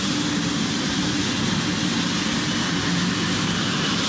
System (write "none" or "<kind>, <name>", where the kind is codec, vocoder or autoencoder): none